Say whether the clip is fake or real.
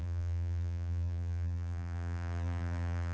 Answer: fake